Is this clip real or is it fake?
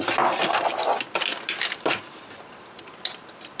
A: real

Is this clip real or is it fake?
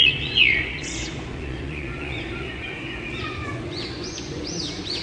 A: fake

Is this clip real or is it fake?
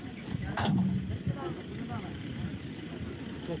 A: real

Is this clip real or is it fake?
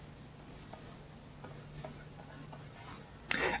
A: real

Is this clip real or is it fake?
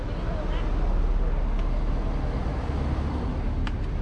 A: real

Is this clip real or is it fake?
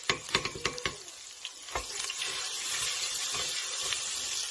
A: real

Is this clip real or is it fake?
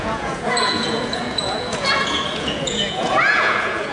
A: fake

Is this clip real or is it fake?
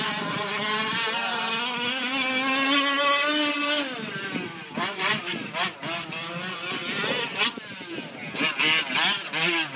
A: real